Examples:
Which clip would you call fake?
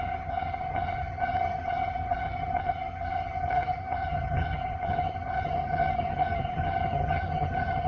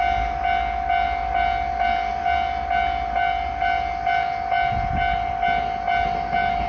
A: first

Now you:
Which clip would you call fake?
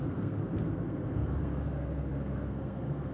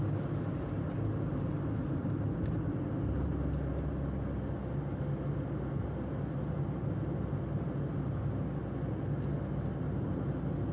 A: first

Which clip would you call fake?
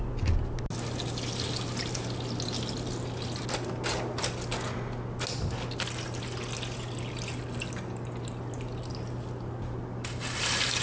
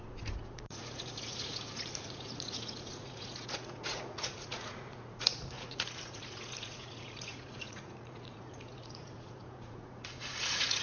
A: second